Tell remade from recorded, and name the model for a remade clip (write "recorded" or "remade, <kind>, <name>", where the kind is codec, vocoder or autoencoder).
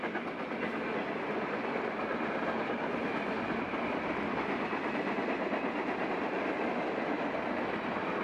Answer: recorded